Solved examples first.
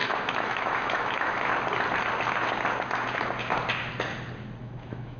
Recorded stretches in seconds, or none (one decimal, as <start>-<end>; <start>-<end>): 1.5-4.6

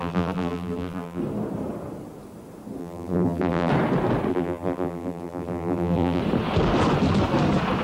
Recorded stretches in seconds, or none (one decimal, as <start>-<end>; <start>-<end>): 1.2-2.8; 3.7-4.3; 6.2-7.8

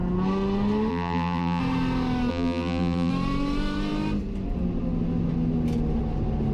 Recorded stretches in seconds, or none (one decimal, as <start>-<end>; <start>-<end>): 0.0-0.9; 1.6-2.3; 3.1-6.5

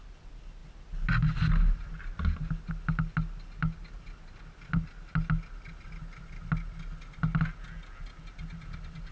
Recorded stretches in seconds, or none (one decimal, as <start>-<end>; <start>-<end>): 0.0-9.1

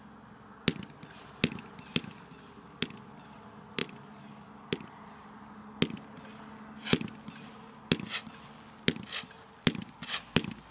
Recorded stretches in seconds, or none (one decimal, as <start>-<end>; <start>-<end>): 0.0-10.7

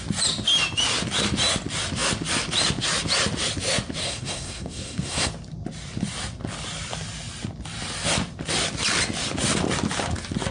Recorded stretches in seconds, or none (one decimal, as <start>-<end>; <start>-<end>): 0.0-4.0; 5.3-10.5

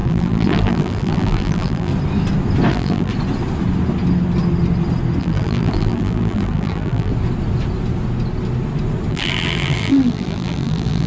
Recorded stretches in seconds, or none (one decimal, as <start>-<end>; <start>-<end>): 1.9-2.7; 3.1-5.2; 7.1-9.1